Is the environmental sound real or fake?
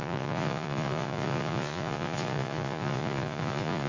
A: fake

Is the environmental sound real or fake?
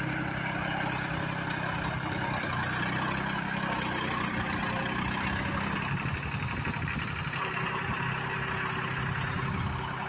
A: real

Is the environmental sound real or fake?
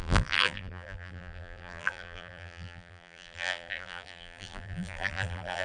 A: fake